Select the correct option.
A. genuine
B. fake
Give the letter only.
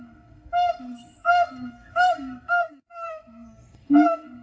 B